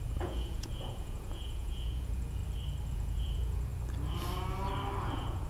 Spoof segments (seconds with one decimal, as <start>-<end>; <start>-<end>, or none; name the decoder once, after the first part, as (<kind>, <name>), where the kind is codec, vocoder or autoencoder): 0.0-2.4 (vocoder, Vocos); 2.9-3.7; 5.0-5.5

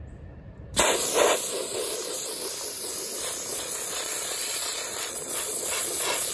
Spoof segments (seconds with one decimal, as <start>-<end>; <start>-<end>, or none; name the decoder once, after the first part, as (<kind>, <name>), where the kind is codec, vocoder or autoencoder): 3.5-6.3 (vocoder, Vocos)

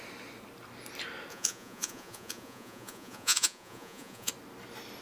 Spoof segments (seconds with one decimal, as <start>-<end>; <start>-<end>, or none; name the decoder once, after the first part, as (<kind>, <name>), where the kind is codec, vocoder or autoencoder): 1.3-4.3 (vocoder, Vocos)

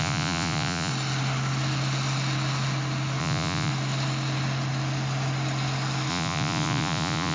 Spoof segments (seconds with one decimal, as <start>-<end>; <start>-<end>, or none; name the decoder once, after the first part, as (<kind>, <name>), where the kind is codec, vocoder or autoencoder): 0.0-0.9 (vocoder, Vocos); 3.2-3.7; 6.1-7.3

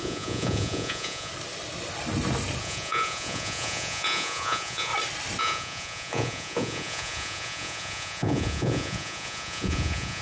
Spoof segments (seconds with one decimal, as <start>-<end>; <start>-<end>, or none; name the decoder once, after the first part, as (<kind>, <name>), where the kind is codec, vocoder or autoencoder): 0.0-1.3 (vocoder, Vocos); 2.6-4.9; 5.4-10.2